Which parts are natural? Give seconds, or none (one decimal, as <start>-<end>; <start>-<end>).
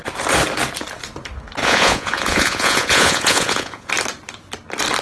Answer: 0.0-1.6; 3.9-5.0